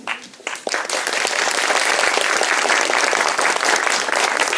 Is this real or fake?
real